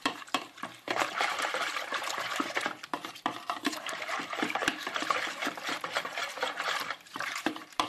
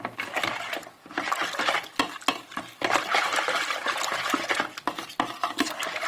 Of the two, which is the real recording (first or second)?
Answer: second